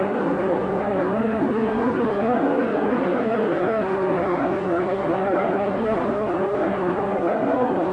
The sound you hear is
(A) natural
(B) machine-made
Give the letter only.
B